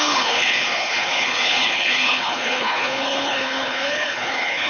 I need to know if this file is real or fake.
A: fake